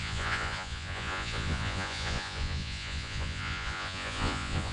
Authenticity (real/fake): fake